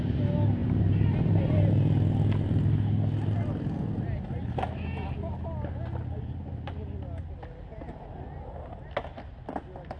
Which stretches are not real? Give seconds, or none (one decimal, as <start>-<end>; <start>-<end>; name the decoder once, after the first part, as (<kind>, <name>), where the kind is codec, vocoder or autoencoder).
0.6-1.7 (vocoder, BigVGAN v2)